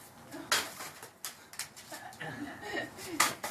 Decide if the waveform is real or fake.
real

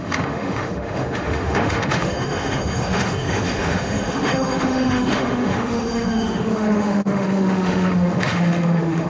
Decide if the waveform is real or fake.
fake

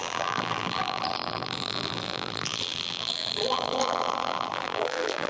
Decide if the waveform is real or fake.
fake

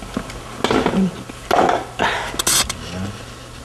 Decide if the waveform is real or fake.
real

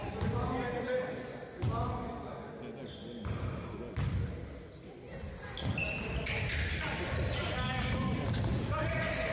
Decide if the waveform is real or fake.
real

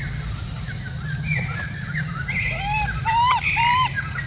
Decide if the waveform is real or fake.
real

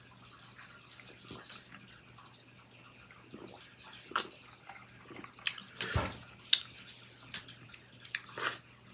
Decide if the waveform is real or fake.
real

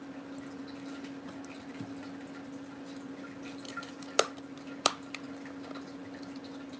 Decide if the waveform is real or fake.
real